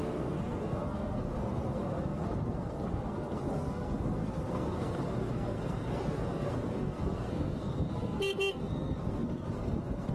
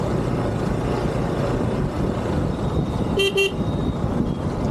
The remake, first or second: first